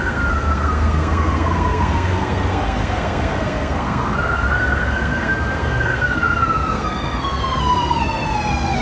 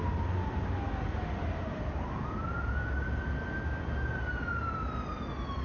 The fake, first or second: first